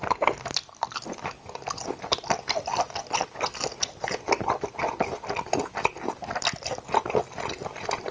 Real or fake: real